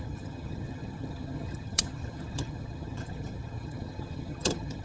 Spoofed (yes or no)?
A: yes